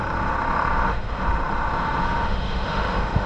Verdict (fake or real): fake